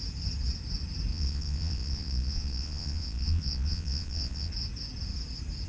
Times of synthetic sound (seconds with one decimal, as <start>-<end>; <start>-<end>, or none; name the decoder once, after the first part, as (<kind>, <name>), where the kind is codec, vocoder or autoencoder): 1.1-4.5 (vocoder, Vocos)